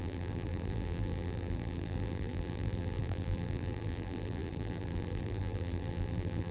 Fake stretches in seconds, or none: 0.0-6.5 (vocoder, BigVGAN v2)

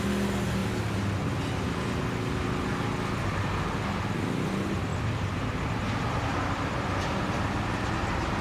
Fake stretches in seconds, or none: 4.9-7.9 (vocoder, BigVGAN v2)

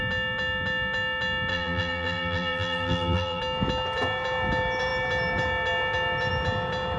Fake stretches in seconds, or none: 1.5-3.4 (vocoder, BigVGAN v2)

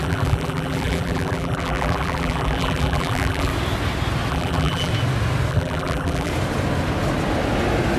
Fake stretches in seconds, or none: 0.0-3.5 (vocoder, BigVGAN v2); 4.3-4.9; 5.5-6.3

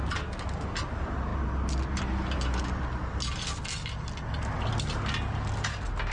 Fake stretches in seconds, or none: none